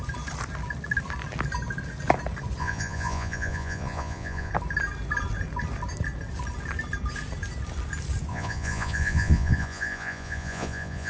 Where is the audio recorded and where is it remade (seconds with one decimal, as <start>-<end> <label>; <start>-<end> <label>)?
0.0-2.6 recorded; 2.6-4.5 remade; 4.5-8.3 recorded; 8.3-11.1 remade